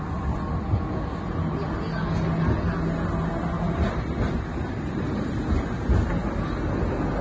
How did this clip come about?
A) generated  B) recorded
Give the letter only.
B